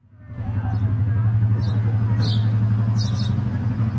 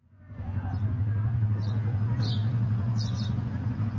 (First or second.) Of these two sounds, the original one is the first